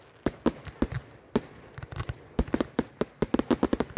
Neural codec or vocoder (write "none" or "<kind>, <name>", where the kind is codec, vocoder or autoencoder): none